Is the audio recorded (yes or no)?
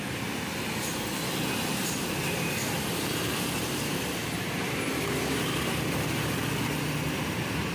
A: yes